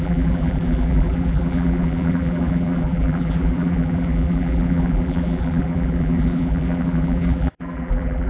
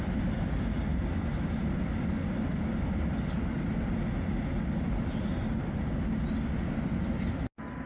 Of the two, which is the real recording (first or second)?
second